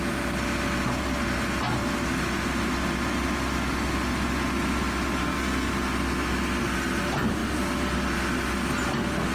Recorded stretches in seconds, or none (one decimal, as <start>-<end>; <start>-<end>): 0.0-5.2; 5.7-9.3